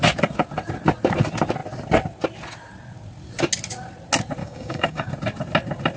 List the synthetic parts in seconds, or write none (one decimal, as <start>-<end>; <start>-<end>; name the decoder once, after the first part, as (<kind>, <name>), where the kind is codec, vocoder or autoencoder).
4.4-5.1 (codec, DAC)